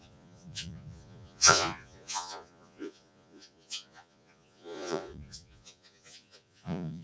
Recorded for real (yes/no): no